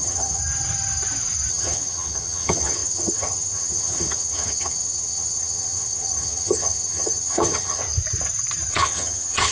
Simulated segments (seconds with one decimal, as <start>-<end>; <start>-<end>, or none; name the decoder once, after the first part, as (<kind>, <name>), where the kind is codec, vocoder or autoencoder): 0.0-0.4 (vocoder, HiFi-GAN); 1.5-7.8; 8.7-9.5